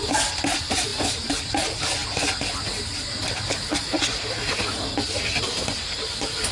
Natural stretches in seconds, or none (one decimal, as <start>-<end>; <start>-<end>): 0.0-6.5

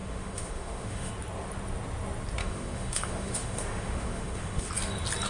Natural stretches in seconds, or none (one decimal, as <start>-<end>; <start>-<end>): 1.1-2.4; 4.7-5.3

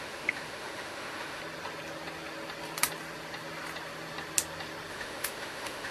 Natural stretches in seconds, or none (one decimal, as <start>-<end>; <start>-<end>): 1.4-4.9

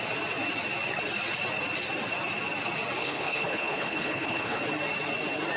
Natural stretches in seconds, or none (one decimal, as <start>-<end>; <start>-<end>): 0.0-3.0; 4.6-5.6

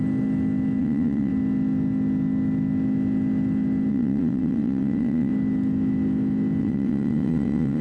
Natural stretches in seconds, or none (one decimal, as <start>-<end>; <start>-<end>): 0.0-0.8; 1.3-3.9; 5.3-6.6

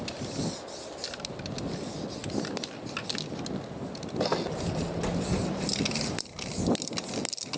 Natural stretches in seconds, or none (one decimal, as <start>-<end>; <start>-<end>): 0.0-7.6

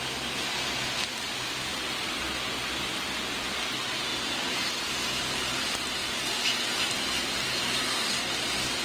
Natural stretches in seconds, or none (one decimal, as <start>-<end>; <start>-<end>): 0.0-8.8

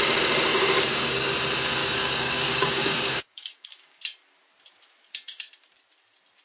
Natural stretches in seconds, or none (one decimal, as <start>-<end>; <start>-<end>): 0.0-0.5; 1.3-1.8; 4.0-6.4